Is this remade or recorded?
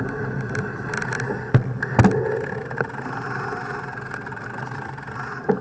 recorded